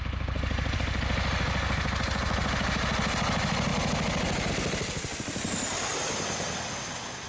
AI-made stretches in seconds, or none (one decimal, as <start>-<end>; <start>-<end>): none